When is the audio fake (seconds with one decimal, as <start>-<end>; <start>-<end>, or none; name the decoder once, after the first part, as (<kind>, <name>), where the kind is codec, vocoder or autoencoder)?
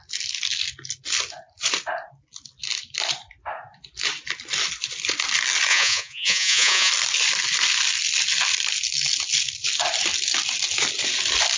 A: 5.7-6.9 (vocoder, Vocos)